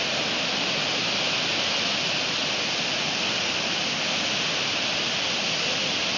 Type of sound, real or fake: real